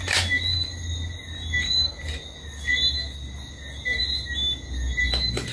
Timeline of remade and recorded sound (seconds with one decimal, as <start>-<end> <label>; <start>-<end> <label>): 0.0-5.5 recorded